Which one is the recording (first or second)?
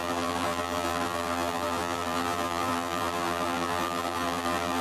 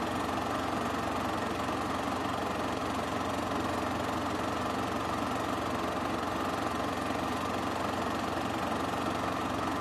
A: second